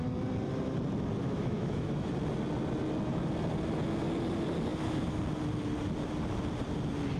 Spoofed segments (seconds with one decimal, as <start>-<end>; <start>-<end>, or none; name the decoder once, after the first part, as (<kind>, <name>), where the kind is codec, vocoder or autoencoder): 1.2-2.1 (autoencoder, DAC-VAE)